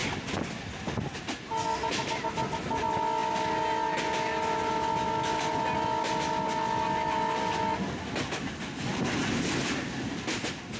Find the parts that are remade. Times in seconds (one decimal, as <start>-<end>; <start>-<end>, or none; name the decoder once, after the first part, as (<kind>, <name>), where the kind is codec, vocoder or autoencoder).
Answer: none